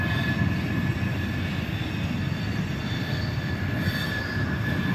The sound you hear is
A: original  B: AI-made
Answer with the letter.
A